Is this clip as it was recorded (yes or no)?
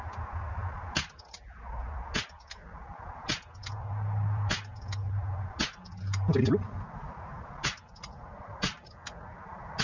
yes